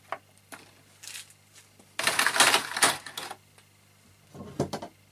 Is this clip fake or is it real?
real